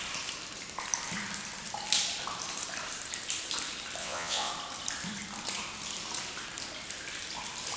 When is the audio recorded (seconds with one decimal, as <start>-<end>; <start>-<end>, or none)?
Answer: 0.0-4.0; 4.5-7.8